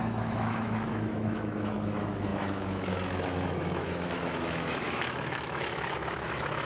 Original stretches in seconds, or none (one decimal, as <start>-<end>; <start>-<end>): none